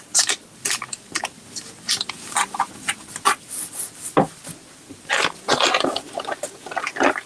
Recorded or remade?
recorded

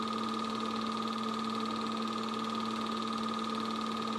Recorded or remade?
recorded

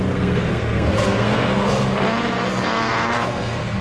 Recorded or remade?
remade